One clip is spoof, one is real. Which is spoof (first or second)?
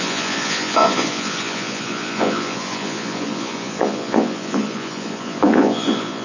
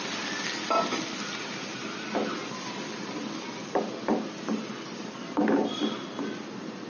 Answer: first